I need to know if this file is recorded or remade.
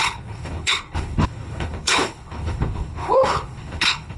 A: remade